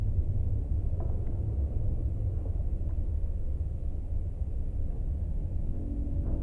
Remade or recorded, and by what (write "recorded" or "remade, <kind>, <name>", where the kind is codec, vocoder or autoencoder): recorded